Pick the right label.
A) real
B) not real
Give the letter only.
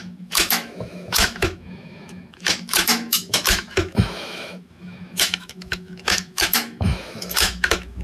B